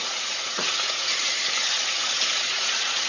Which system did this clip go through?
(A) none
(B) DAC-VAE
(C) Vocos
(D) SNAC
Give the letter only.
C